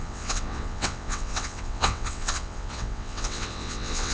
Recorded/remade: remade